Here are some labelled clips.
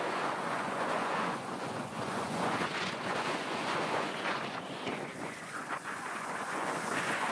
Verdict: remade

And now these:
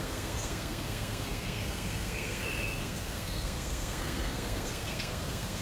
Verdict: remade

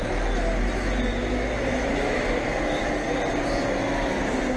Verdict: recorded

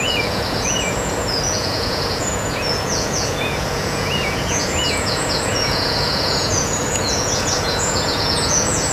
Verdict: remade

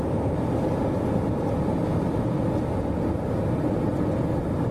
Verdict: recorded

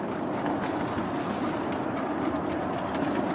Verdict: recorded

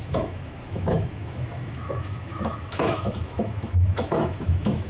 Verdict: remade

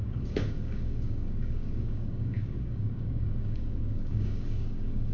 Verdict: remade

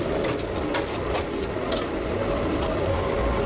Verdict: recorded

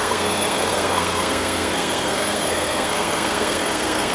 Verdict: remade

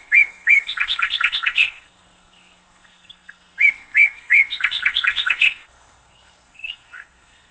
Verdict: remade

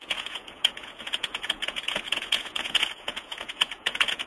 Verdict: remade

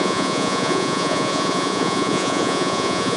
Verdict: remade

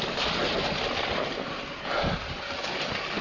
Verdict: recorded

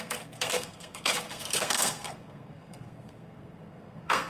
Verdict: remade